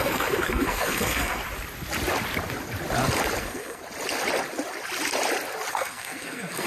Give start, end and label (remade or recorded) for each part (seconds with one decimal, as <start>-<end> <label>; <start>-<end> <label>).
0.0-1.4 remade; 1.4-3.4 recorded; 3.4-3.8 remade; 3.8-5.7 recorded; 5.7-6.7 remade